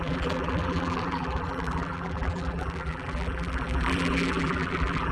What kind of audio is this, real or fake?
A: fake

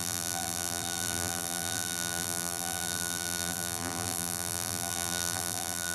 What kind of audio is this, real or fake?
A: fake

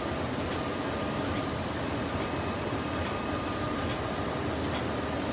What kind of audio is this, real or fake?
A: real